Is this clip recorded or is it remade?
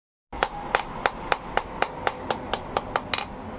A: recorded